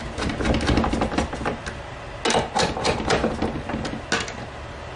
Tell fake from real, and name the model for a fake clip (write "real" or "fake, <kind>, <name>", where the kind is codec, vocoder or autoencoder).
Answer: real